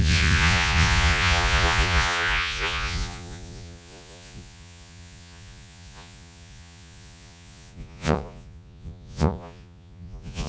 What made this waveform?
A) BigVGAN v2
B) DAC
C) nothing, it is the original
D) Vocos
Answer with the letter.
D